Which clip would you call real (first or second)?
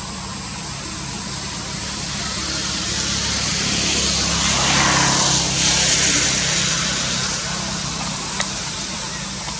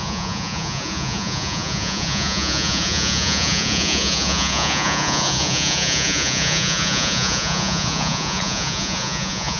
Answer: first